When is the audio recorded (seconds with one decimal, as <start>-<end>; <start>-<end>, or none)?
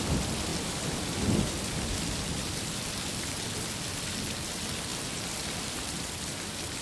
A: none